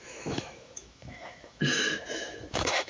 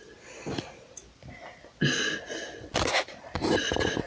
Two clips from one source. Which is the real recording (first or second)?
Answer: second